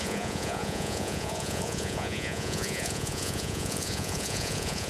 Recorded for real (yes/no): no